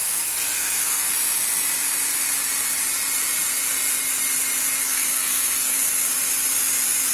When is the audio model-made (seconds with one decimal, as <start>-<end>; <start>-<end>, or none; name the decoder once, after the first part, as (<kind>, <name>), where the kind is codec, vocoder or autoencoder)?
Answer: 0.0-1.1 (codec, SNAC); 4.8-5.9